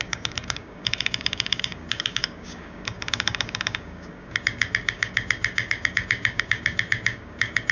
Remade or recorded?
remade